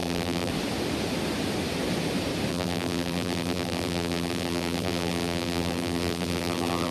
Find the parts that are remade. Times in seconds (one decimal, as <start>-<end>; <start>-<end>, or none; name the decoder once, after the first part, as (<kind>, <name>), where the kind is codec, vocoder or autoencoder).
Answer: 0.0-0.5 (vocoder, BigVGAN v2); 2.5-6.9